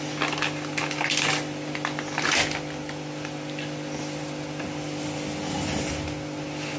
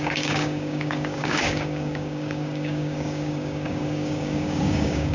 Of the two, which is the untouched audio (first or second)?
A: first